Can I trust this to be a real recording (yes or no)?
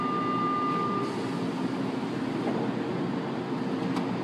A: yes